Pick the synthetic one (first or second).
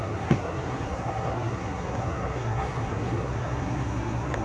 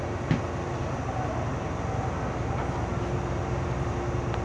first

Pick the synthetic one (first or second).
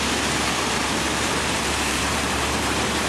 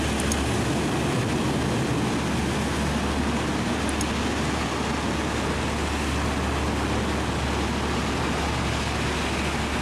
first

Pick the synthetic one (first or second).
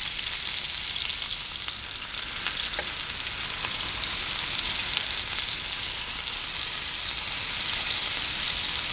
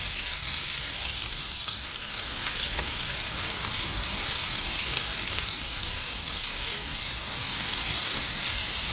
second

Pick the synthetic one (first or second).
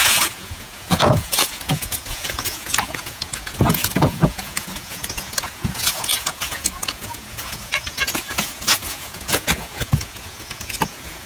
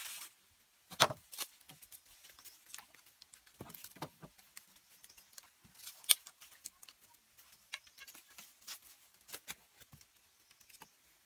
first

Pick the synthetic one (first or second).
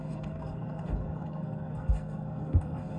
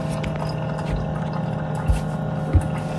first